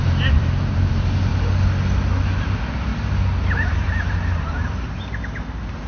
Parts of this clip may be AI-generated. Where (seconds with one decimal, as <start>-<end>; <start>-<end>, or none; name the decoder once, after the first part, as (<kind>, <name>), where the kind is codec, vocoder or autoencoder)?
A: 0.0-1.3 (vocoder, BigVGAN v2); 2.4-2.9; 3.7-5.9